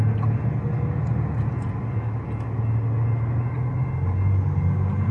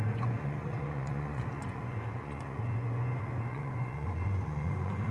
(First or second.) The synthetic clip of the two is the second